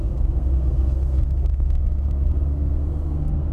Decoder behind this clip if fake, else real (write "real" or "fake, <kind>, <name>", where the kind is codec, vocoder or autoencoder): fake, codec, SNAC